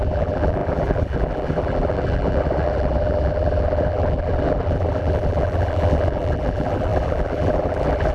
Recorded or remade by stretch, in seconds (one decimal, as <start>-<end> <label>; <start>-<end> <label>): 0.0-8.1 remade